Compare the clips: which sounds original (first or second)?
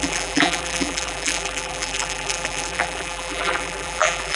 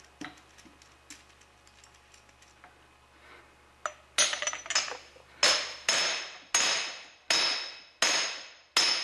second